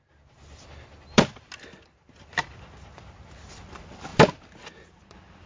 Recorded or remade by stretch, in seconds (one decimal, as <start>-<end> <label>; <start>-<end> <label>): 0.0-5.5 recorded